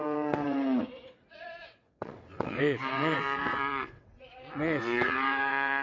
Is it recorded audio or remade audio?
remade